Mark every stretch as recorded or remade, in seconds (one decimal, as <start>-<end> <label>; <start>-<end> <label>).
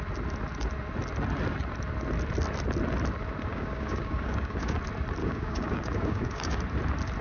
0.0-3.5 recorded; 3.5-4.8 remade; 4.8-5.2 recorded; 5.2-6.6 remade; 6.6-7.2 recorded